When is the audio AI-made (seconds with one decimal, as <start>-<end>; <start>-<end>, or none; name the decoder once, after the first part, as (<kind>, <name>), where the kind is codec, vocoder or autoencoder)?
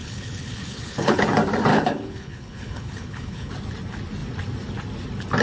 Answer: 0.0-1.2 (codec, HILCodec); 1.7-3.5